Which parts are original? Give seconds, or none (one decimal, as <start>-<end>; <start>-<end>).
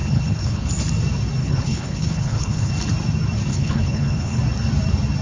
0.7-1.4; 2.7-3.5; 4.4-5.2